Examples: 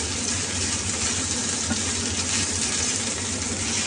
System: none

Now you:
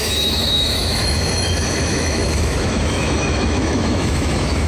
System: autoencoder, DAC-VAE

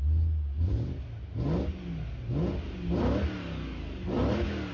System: none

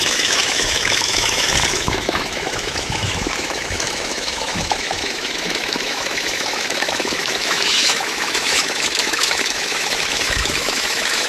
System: autoencoder, DAC-VAE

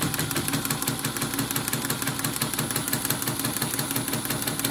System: none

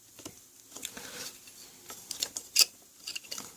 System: none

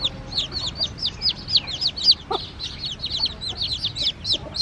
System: none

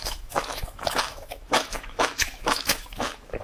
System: autoencoder, DAC-VAE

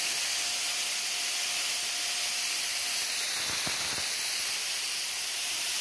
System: none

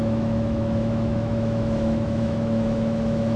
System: autoencoder, DAC-VAE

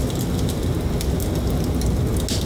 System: none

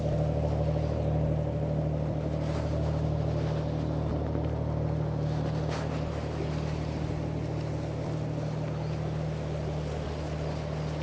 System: none